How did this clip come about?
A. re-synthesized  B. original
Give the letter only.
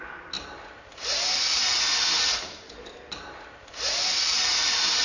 B